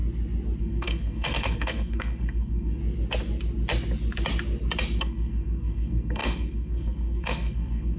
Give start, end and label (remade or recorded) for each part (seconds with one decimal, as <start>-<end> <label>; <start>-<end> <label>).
0.0-0.6 recorded; 0.6-2.8 remade; 2.8-5.0 recorded; 5.0-8.0 remade